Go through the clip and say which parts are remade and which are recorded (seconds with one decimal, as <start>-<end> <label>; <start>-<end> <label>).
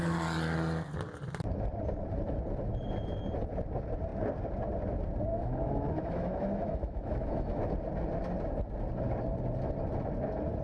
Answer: 0.0-5.3 recorded; 5.3-7.6 remade; 7.6-10.6 recorded